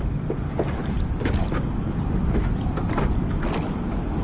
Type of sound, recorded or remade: recorded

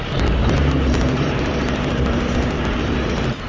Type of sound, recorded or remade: remade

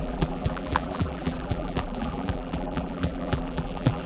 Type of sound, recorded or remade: remade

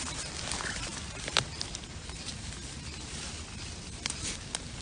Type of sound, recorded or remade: remade